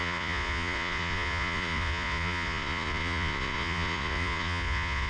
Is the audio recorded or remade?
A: remade